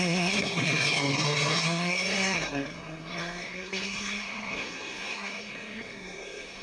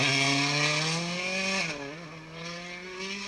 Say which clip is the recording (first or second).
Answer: second